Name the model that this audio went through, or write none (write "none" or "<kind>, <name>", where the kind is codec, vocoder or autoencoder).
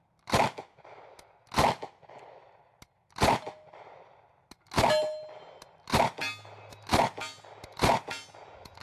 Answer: none